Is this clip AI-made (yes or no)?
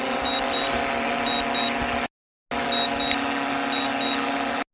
no